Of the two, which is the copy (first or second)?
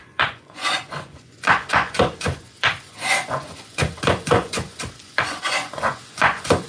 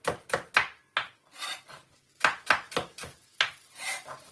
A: first